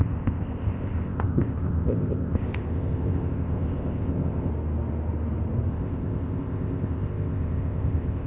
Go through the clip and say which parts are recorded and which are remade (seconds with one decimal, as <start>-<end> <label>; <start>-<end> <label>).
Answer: 0.0-4.5 remade; 4.5-5.7 recorded; 5.7-8.3 remade